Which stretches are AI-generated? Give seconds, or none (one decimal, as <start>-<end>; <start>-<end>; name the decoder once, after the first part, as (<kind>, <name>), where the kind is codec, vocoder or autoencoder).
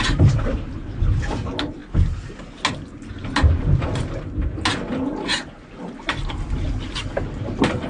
none